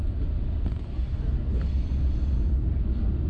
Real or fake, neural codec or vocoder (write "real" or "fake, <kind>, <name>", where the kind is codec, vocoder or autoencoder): real